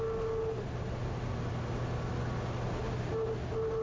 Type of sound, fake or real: real